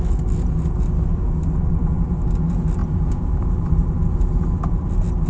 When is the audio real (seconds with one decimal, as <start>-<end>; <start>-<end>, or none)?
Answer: 0.0-5.3